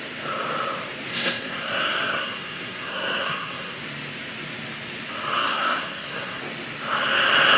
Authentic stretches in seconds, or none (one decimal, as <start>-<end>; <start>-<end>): 0.0-1.1; 3.8-5.4; 6.4-7.6